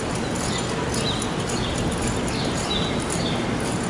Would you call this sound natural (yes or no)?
yes